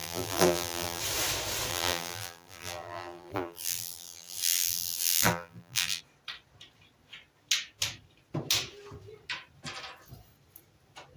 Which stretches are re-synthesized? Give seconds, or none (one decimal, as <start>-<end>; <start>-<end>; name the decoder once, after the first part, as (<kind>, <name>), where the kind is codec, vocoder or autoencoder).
0.0-1.0 (vocoder, BigVGAN v2); 1.7-6.0